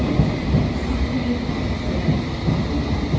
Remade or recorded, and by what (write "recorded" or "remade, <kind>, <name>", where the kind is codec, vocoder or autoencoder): recorded